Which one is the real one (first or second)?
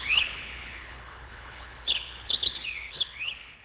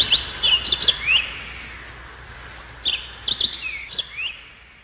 second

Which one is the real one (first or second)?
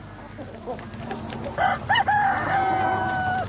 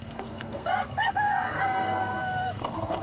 first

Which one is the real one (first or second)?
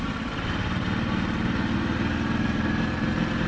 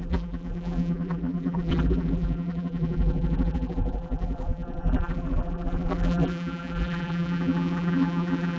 first